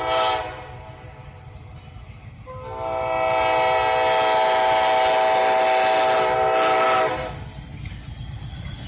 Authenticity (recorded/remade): recorded